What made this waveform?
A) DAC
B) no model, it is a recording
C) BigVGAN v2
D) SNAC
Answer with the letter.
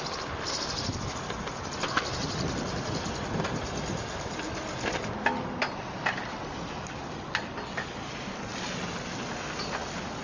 B